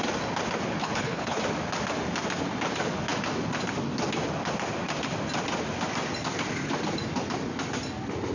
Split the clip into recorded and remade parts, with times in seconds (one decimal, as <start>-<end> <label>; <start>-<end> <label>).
0.0-0.8 recorded; 0.8-1.4 remade; 1.4-8.3 recorded